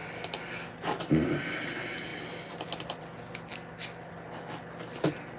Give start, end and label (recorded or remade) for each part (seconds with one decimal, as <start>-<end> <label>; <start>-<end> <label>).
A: 0.0-5.4 recorded